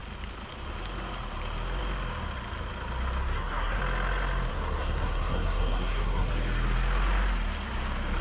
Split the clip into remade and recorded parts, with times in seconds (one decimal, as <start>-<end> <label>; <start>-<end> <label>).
0.0-3.2 recorded; 3.2-3.8 remade; 3.8-4.5 recorded; 4.5-6.3 remade; 6.3-8.2 recorded